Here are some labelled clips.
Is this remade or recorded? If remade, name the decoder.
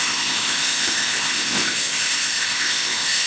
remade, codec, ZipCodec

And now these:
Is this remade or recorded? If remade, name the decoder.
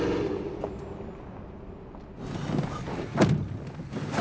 recorded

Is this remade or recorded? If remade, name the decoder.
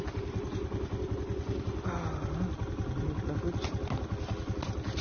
recorded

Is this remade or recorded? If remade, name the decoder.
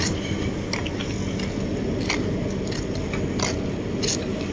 recorded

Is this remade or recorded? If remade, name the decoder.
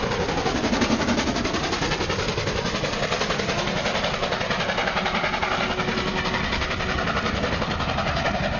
recorded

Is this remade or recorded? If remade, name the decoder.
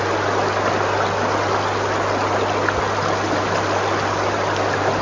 recorded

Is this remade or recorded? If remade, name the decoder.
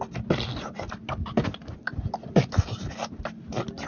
recorded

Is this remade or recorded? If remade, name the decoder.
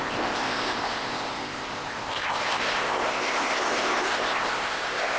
remade, codec, ZipCodec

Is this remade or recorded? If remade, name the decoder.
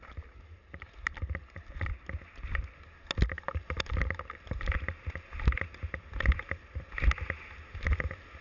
recorded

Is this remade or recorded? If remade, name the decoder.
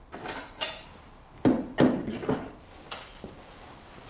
recorded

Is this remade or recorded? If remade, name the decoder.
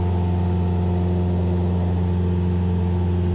recorded